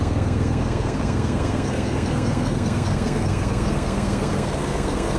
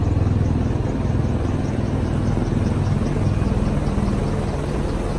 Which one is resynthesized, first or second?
first